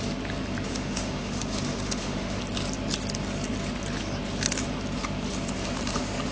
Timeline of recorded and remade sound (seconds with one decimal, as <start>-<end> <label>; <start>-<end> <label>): 0.0-0.7 recorded; 0.7-2.4 remade; 2.4-6.3 recorded